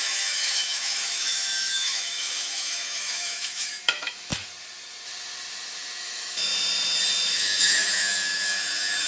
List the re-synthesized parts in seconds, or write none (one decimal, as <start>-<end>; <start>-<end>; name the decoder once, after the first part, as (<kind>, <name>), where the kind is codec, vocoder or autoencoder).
0.0-4.3 (autoencoder, DAC-VAE); 6.0-6.5; 7.3-9.1